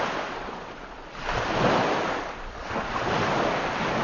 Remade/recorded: recorded